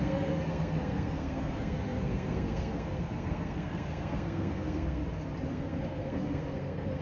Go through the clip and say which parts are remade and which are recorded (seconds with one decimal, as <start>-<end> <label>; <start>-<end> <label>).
0.0-5.0 remade; 5.0-5.5 recorded; 5.5-7.0 remade

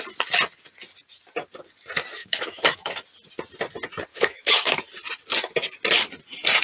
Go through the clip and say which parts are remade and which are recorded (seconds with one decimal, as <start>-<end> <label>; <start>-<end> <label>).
0.0-2.2 recorded; 2.2-2.9 remade; 2.9-4.1 recorded; 4.1-4.8 remade; 4.8-6.6 recorded